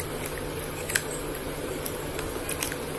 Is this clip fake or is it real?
real